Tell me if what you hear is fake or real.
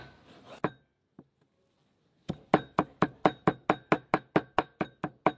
real